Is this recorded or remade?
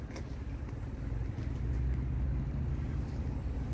recorded